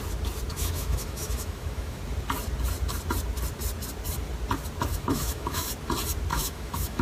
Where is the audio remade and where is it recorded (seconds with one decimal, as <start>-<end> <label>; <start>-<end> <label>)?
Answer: 0.0-0.5 recorded; 0.5-2.0 remade; 2.0-4.9 recorded; 4.9-5.7 remade; 5.7-6.3 recorded; 6.3-7.0 remade